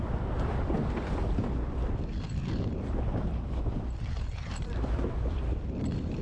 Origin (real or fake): fake